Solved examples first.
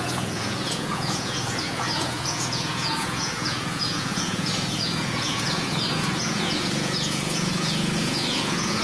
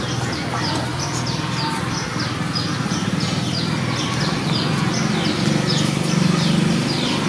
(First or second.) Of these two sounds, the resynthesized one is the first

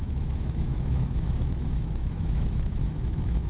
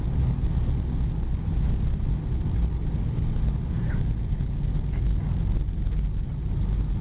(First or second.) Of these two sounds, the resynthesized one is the first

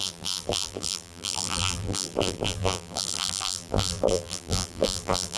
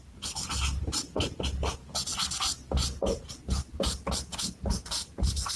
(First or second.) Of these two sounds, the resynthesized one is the first